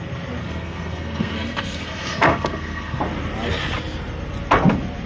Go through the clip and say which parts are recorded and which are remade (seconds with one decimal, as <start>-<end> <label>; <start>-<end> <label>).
0.0-0.4 recorded; 0.4-3.0 remade; 3.0-5.1 recorded